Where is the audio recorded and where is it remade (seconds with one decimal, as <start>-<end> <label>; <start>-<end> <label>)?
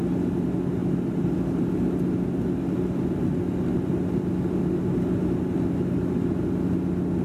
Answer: 0.0-7.2 recorded